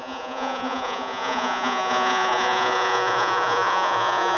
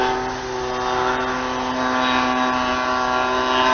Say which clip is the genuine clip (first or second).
second